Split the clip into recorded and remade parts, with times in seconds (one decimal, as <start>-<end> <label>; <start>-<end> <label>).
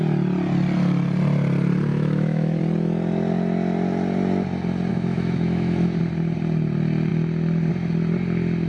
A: 0.0-1.9 recorded; 1.9-2.6 remade; 2.6-4.9 recorded; 4.9-6.0 remade; 6.0-8.7 recorded